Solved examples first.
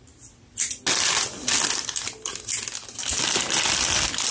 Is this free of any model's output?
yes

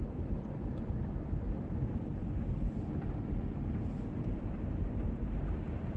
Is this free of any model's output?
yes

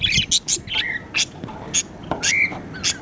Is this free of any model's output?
yes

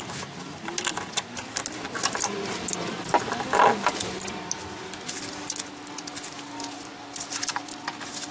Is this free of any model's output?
yes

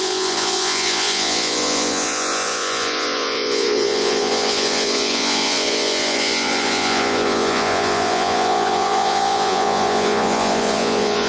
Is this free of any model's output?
no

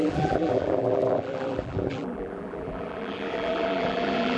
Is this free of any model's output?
no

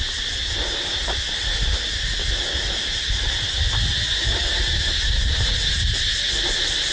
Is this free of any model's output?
yes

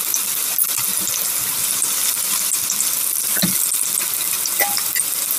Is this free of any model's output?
yes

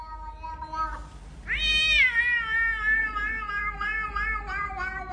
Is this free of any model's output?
yes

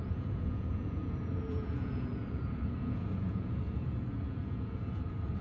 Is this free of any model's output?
no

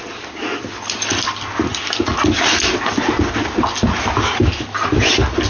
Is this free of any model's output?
yes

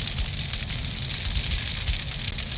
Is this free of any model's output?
yes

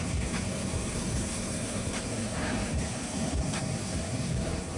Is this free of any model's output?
no